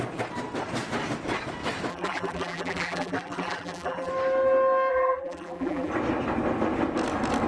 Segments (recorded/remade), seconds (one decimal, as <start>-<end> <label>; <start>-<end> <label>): 0.0-1.9 recorded; 1.9-4.1 remade; 4.1-4.9 recorded; 4.9-5.9 remade; 5.9-7.5 recorded